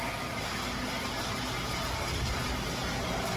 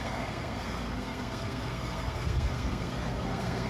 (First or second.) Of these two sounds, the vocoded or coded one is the second